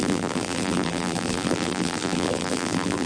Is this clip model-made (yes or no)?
yes